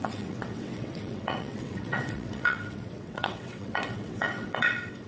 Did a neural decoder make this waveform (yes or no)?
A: yes